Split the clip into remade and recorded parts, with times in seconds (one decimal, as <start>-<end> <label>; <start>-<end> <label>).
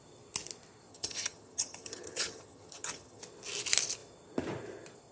0.0-0.9 recorded; 0.9-3.2 remade; 3.2-5.1 recorded